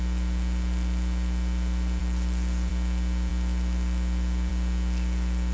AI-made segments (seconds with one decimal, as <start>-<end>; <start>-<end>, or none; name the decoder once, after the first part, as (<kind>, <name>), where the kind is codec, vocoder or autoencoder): 2.0-2.7 (vocoder, BigVGAN v2)

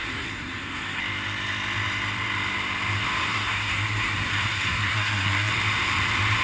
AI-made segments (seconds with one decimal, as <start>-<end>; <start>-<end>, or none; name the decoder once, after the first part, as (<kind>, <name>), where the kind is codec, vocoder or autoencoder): 0.0-1.0 (codec, SNAC); 3.2-5.5